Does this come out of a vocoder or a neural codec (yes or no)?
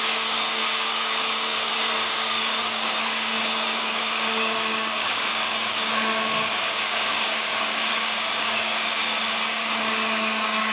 yes